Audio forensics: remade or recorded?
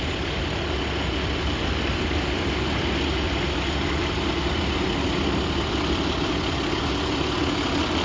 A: recorded